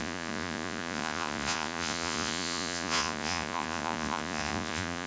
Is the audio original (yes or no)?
no